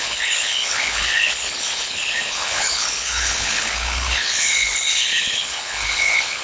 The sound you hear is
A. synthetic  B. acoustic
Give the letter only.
A